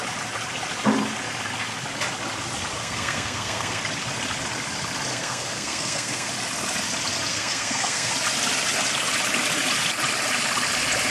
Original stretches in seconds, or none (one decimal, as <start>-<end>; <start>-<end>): 0.0-2.8; 3.8-5.1; 6.3-7.3; 8.1-11.1